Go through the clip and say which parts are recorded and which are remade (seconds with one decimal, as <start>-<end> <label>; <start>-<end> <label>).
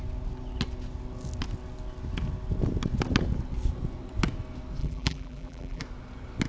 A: 0.0-4.8 recorded; 4.8-5.8 remade; 5.8-6.5 recorded